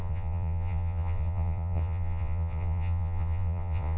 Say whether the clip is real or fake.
fake